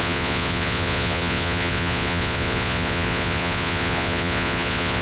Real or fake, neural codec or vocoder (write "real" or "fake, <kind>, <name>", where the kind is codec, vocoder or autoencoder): fake, vocoder, Vocos